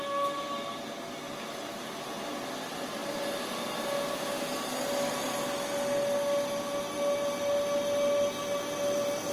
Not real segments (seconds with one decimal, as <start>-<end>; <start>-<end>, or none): none